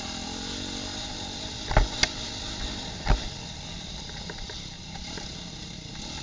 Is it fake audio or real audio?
fake